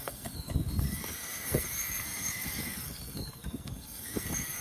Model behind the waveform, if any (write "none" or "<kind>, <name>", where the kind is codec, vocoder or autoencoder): codec, SNAC